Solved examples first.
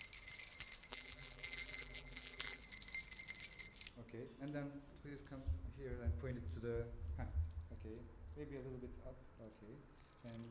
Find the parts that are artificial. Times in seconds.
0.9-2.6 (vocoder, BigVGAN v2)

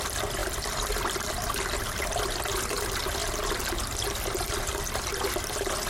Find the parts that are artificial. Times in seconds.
none